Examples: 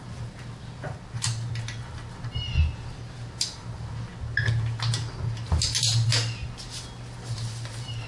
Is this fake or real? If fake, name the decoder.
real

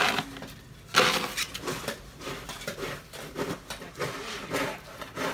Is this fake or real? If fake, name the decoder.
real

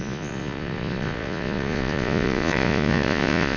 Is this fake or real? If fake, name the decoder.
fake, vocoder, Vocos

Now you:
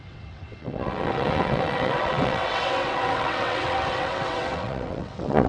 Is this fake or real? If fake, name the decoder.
fake, vocoder, WaveNeXt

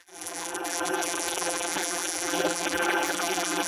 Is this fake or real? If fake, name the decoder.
fake, vocoder, BigVGAN v2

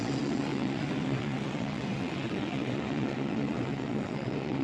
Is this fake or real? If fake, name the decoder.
fake, vocoder, WaveNeXt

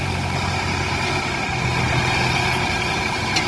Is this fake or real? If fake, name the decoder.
real